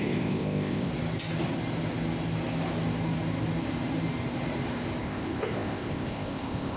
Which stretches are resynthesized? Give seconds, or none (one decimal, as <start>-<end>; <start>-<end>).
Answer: 0.0-0.9; 5.0-6.8